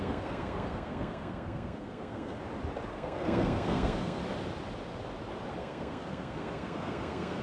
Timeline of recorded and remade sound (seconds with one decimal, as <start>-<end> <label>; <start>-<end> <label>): 0.0-2.4 remade; 2.4-2.9 recorded; 2.9-4.2 remade; 4.2-5.5 recorded; 5.5-7.4 remade